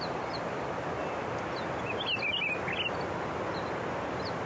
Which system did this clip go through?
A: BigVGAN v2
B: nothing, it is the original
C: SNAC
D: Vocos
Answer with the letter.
B